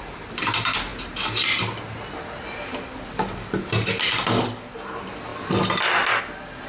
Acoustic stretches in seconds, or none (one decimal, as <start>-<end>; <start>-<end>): 0.0-6.7